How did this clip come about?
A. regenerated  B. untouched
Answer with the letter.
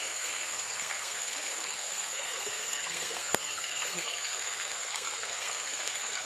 A